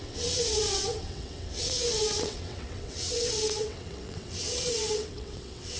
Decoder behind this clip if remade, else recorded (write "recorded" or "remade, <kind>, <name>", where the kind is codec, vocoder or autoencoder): remade, vocoder, WaveNeXt